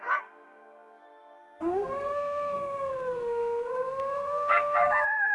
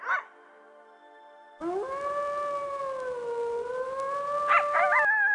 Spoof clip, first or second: first